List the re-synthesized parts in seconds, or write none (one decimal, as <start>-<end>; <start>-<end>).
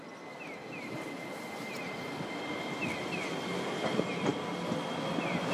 none